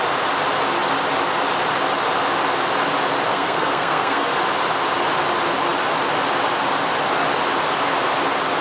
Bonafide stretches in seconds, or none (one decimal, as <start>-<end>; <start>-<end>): 0.0-3.3; 4.4-8.6